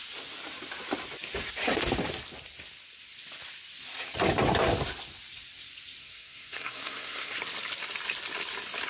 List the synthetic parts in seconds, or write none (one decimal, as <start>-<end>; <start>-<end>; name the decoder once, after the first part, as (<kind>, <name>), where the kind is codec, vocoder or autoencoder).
6.0-7.4 (codec, SNAC)